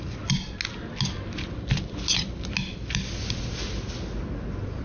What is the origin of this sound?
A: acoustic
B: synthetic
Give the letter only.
A